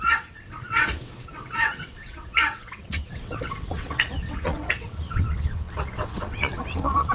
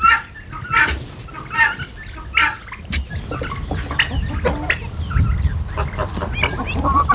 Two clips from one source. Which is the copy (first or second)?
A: first